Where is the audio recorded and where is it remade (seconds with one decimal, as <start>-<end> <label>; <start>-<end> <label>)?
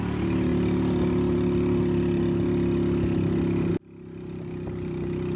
0.0-5.4 recorded